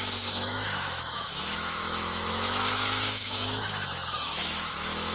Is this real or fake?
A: fake